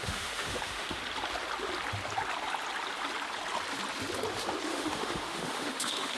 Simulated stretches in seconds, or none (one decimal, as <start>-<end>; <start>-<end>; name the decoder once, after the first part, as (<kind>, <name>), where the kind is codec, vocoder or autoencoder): 0.0-1.0 (autoencoder, DAC-VAE); 4.7-6.2